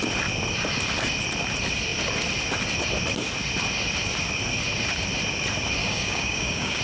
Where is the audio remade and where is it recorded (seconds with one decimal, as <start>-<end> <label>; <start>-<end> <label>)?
0.0-5.8 recorded; 5.8-6.8 remade